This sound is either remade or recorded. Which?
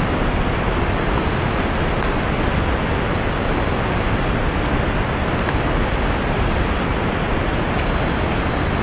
recorded